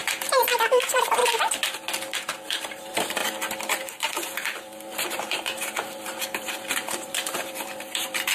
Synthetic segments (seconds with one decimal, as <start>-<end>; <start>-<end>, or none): 0.0-1.2; 2.2-3.2; 3.7-8.3